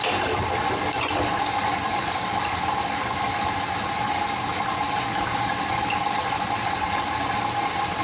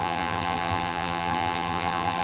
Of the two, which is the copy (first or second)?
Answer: second